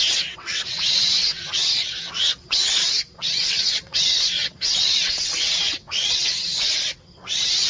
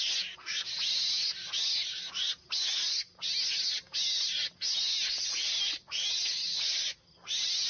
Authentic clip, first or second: second